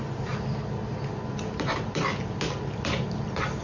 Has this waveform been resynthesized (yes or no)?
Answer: no